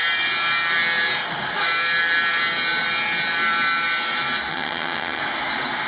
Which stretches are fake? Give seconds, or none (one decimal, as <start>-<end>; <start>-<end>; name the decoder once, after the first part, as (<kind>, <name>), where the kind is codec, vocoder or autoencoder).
4.5-5.2 (vocoder, HiFi-GAN)